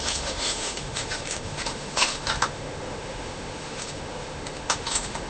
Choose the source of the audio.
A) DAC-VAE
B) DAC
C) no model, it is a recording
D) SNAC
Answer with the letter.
A